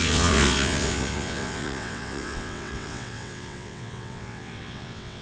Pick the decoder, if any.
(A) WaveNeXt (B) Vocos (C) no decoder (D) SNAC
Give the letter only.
A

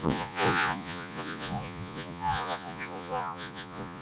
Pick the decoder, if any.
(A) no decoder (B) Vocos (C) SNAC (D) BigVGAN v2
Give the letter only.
B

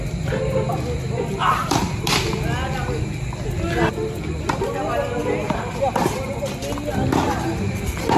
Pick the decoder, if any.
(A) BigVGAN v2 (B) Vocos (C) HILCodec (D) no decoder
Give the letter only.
D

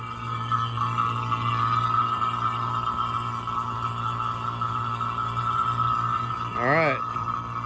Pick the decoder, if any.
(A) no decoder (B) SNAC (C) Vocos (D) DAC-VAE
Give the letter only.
A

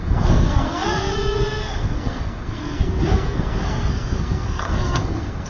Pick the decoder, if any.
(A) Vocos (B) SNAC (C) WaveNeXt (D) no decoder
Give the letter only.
B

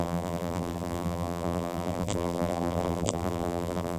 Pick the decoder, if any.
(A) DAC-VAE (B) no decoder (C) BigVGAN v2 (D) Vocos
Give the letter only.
C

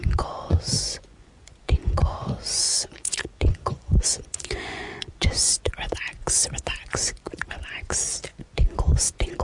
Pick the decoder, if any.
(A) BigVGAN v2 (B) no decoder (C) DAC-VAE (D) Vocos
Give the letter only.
D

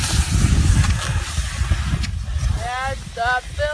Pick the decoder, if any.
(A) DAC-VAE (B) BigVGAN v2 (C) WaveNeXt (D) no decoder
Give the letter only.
D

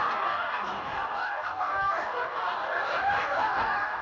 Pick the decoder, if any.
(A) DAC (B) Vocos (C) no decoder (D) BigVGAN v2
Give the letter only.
A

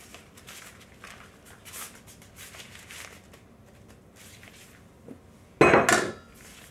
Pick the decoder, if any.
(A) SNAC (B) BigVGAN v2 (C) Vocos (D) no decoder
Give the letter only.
D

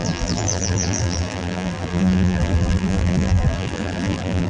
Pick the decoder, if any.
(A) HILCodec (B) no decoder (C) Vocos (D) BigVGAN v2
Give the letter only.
D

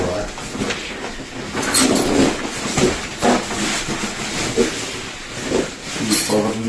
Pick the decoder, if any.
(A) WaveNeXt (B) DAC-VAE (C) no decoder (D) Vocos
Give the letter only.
C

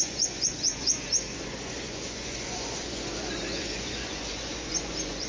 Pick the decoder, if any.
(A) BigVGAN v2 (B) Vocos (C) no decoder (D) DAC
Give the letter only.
B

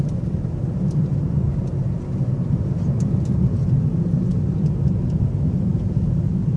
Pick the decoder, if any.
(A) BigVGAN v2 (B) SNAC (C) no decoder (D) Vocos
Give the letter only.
A